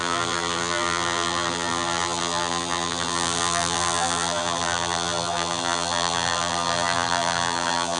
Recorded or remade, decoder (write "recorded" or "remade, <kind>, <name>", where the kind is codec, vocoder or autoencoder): remade, vocoder, BigVGAN v2